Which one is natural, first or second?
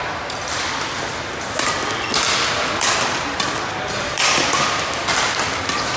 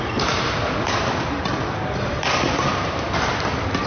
first